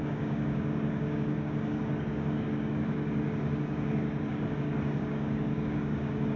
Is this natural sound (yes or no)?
no